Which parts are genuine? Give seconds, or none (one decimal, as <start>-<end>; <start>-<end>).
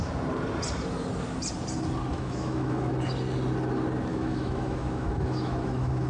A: 0.0-2.1; 2.9-4.1